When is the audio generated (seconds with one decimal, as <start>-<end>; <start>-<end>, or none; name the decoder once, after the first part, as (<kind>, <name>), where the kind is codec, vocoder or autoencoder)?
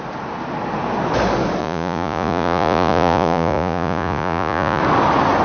1.6-4.8 (vocoder, Vocos)